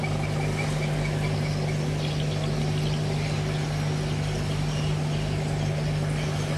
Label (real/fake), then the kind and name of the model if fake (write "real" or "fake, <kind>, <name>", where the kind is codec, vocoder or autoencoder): real